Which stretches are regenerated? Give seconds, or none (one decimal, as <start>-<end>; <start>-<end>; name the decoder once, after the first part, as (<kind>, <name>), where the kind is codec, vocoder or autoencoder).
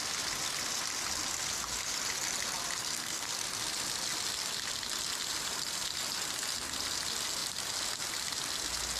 2.8-3.3 (codec, SNAC)